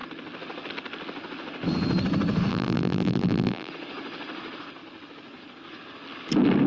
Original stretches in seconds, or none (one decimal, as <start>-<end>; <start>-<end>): 0.0-2.5; 3.7-6.7